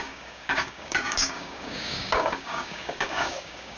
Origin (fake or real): fake